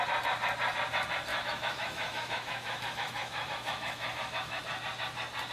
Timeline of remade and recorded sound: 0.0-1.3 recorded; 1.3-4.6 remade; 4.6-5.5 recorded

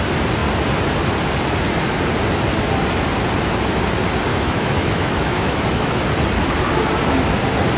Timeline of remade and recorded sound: 0.0-4.3 recorded; 4.3-6.0 remade; 6.0-7.8 recorded

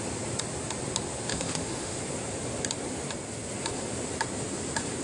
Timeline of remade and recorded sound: 0.0-1.3 recorded; 1.3-2.0 remade; 2.0-5.0 recorded

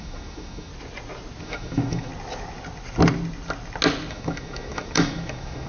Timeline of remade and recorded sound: 0.0-0.7 remade; 0.7-1.4 recorded; 1.4-2.1 remade; 2.1-4.1 recorded; 4.1-5.7 remade

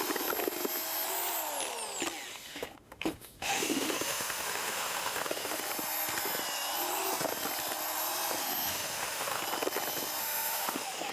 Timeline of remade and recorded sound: 0.0-2.3 recorded; 2.3-5.6 remade; 5.6-8.4 recorded; 8.4-9.4 remade; 9.4-10.2 recorded; 10.2-11.1 remade

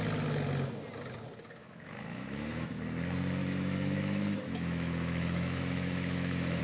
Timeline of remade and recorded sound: 0.0-1.6 recorded; 1.6-2.7 remade; 2.7-3.4 recorded; 3.4-6.6 remade